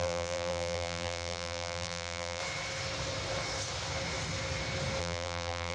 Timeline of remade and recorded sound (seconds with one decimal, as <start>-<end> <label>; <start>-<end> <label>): 0.0-2.4 remade; 2.4-5.0 recorded; 5.0-5.7 remade